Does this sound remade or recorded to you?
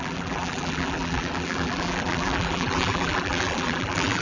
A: remade